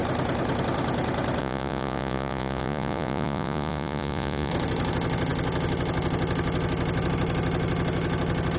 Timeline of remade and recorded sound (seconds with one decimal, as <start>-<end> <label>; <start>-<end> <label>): 0.0-1.4 recorded; 1.4-4.5 remade; 4.5-8.6 recorded